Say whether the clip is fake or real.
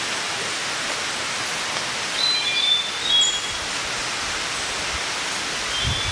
real